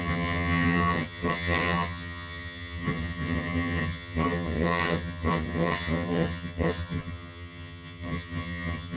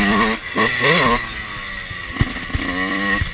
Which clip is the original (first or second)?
second